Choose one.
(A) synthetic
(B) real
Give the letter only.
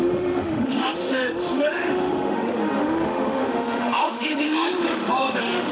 A